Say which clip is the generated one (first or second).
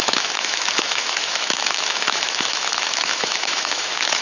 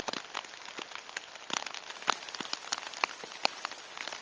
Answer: first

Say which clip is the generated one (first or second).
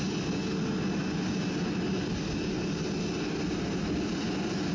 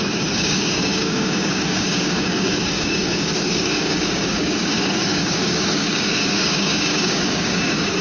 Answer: second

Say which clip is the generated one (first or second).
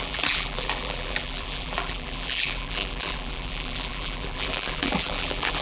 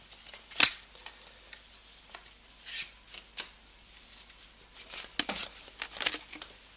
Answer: first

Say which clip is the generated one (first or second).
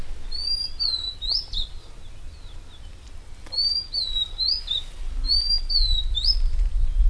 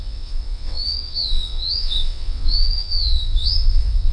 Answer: second